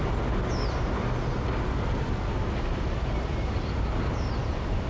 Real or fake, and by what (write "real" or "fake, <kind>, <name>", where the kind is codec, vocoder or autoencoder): real